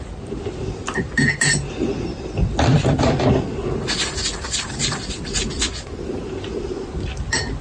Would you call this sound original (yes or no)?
yes